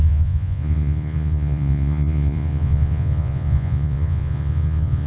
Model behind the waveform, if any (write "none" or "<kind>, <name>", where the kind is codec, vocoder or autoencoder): vocoder, Vocos